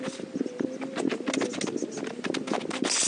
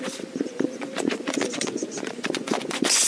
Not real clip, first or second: second